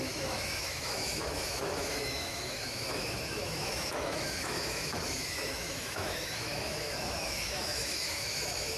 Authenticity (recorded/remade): remade